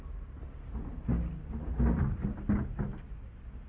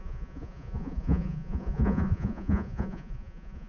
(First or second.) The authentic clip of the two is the first